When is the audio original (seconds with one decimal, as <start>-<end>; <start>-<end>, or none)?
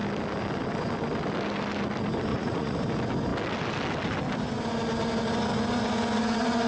0.0-2.3; 2.8-6.7